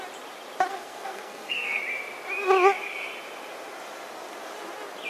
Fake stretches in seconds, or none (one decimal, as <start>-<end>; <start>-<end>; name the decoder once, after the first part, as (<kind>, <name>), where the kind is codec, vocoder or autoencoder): 0.7-1.8 (codec, SNAC)